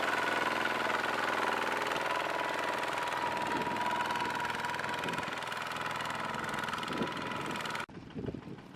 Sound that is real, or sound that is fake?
real